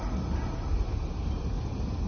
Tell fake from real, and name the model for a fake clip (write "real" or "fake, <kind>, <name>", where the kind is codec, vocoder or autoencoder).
real